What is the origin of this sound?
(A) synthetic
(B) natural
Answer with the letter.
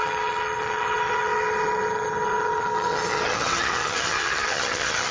A